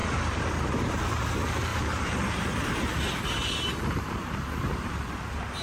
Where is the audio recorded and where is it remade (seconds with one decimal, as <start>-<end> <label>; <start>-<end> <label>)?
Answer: 0.0-1.0 remade; 1.0-1.7 recorded; 1.7-5.1 remade; 5.1-5.6 recorded

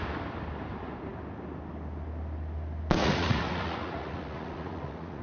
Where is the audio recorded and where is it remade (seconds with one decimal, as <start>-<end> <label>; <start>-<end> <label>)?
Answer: 0.0-3.0 recorded; 3.0-5.2 remade

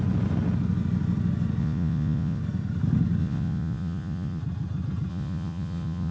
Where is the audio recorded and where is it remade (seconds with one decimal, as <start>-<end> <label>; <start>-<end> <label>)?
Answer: 0.0-1.6 recorded; 1.6-2.4 remade; 2.4-3.2 recorded; 3.2-4.4 remade; 4.4-5.1 recorded; 5.1-6.1 remade